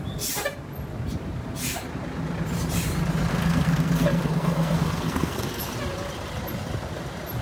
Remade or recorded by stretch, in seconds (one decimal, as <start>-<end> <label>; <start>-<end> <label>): 0.0-3.3 recorded; 3.3-5.7 remade; 5.7-7.4 recorded